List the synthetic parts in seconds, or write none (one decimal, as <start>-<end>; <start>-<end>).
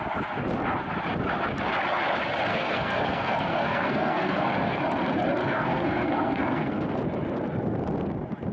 2.5-4.8; 5.4-7.0